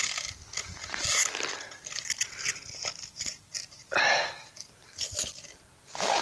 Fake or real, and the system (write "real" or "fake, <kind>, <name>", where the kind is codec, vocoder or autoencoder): real